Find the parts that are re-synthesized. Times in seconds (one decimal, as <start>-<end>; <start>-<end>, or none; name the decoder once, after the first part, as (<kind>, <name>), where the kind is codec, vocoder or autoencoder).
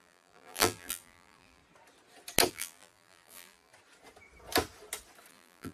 0.0-1.6 (vocoder, BigVGAN v2); 2.5-3.7; 5.3-5.7